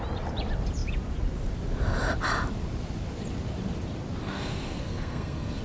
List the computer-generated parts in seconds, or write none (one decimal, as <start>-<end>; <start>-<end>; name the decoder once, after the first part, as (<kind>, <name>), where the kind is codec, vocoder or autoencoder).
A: 4.2-5.6 (codec, SNAC)